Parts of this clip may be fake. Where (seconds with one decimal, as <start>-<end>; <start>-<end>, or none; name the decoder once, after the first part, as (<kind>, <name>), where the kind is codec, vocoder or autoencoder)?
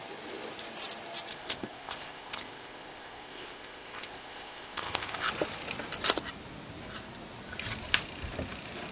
1.3-5.3 (codec, ZipCodec)